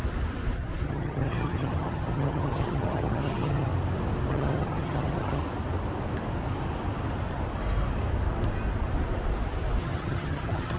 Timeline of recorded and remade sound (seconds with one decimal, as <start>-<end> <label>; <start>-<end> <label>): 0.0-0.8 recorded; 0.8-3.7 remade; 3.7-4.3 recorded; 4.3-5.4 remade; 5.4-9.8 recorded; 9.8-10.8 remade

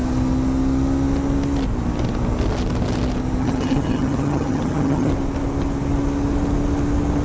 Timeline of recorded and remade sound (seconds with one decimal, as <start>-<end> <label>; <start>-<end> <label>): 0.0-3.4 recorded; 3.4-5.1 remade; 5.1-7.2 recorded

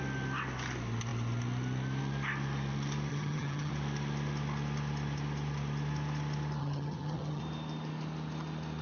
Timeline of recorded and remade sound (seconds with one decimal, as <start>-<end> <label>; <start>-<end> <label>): 0.0-3.1 recorded; 3.1-3.7 remade; 3.7-6.6 recorded; 6.6-7.4 remade; 7.4-8.8 recorded

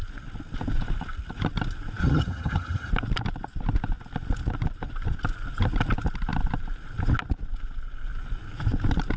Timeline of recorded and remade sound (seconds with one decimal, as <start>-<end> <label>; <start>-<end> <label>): 0.0-2.0 recorded; 2.0-2.9 remade; 2.9-9.2 recorded

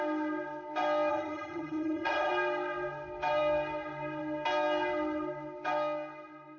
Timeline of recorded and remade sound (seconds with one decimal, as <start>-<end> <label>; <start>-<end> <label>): 0.0-1.1 recorded; 1.1-2.3 remade; 2.3-6.6 recorded

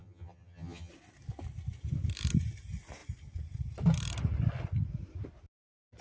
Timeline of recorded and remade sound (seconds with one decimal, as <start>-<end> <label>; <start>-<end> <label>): 0.0-0.9 remade; 0.9-6.0 recorded

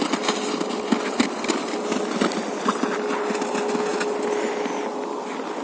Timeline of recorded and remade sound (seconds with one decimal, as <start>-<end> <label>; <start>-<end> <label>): 0.0-5.6 recorded

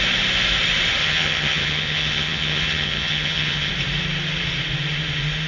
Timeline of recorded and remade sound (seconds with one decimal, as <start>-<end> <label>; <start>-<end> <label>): 0.0-1.0 recorded; 1.0-3.7 remade; 3.7-5.5 recorded